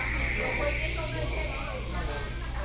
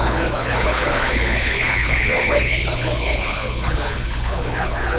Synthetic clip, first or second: second